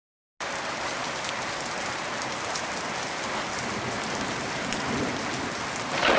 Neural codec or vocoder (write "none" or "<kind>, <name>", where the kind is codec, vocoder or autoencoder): none